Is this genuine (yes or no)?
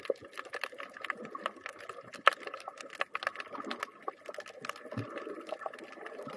yes